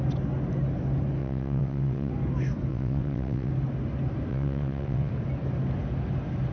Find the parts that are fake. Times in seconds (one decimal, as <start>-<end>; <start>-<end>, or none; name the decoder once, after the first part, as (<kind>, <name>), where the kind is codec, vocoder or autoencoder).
1.2-2.1 (vocoder, WaveNeXt); 2.7-3.5; 4.3-5.1